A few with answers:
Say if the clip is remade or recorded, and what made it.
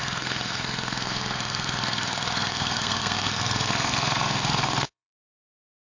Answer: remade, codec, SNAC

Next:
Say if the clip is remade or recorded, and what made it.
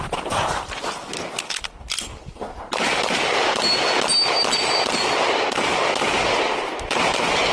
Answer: recorded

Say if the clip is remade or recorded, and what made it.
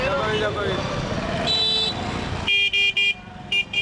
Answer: recorded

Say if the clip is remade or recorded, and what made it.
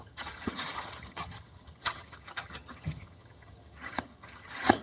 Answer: remade, vocoder, HiFi-GAN